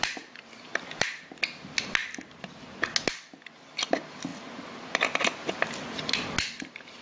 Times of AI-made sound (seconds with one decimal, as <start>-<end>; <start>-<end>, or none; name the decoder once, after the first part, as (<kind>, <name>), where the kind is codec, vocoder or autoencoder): none